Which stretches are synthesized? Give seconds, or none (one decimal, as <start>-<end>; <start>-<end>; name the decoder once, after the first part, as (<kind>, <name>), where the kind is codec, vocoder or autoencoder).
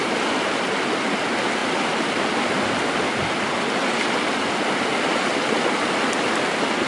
none